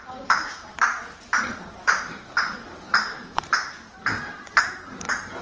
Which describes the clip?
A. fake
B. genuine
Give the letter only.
A